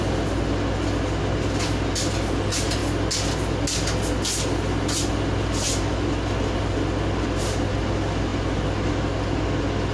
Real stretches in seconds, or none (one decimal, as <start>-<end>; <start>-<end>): 0.0-9.9